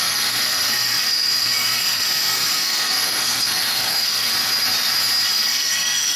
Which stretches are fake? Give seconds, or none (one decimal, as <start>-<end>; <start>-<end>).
0.0-4.3; 5.3-6.2